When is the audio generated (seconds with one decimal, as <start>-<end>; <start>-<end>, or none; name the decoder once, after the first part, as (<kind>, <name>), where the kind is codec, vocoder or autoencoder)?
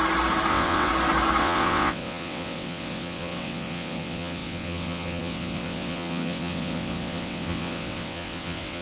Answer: 0.5-0.9 (vocoder, WaveNeXt); 1.4-8.8